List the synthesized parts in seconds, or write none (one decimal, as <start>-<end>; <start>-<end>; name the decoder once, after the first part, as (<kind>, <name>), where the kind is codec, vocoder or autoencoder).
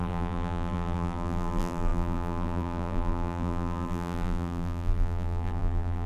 0.0-6.1 (vocoder, BigVGAN v2)